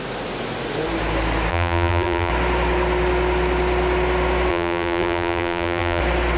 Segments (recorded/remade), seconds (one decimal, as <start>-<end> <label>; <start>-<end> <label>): 0.0-1.5 recorded; 1.5-2.3 remade; 2.3-4.5 recorded; 4.5-6.0 remade; 6.0-6.4 recorded